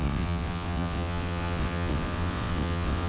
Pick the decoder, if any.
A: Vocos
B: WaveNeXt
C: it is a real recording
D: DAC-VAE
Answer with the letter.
B